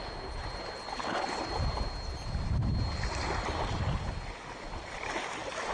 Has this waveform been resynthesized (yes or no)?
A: no